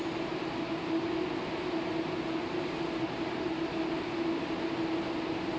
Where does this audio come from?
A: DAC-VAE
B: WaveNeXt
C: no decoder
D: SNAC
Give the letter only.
C